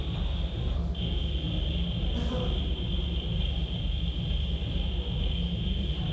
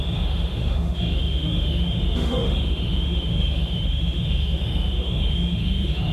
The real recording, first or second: first